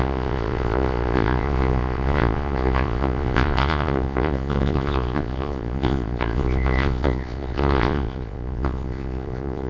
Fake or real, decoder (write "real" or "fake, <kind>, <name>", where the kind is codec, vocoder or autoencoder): fake, vocoder, Vocos